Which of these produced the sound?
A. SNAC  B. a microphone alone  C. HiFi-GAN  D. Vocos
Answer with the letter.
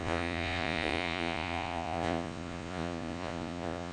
D